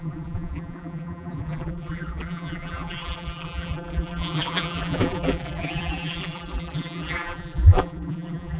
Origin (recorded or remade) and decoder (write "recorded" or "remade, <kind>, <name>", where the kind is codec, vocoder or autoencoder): remade, vocoder, BigVGAN v2